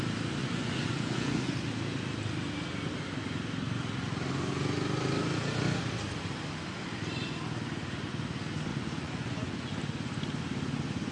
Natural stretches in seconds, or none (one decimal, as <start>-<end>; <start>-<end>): 0.0-0.4; 1.5-8.7; 9.7-11.1